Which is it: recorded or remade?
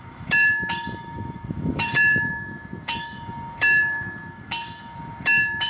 remade